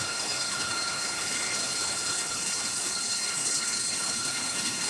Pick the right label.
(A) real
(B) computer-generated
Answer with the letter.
B